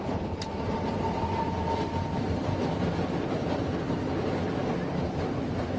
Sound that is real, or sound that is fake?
real